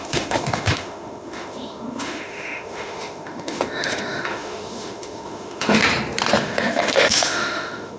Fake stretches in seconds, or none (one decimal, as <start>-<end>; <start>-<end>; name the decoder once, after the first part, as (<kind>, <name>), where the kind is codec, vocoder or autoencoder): 0.0-5.8 (autoencoder, DAC-VAE); 6.4-8.0